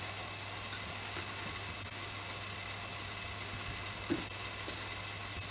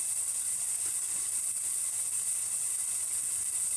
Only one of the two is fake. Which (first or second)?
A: second